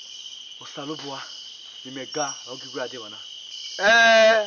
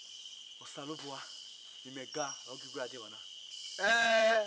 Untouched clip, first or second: first